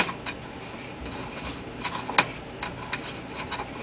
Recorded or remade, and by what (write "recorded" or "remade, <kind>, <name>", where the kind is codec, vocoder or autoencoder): recorded